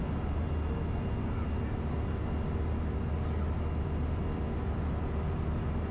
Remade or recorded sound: recorded